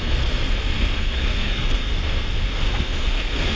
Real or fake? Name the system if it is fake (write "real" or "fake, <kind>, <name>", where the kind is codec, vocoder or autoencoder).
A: fake, codec, SNAC